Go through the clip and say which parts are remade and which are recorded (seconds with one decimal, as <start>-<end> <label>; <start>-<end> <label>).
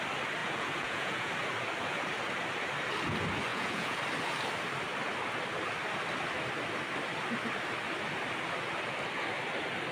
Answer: 0.0-0.4 recorded; 0.4-1.3 remade; 1.3-3.5 recorded; 3.5-4.0 remade; 4.0-9.9 recorded